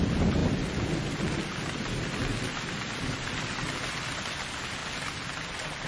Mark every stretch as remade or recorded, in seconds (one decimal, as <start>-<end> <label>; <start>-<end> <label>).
0.0-5.9 recorded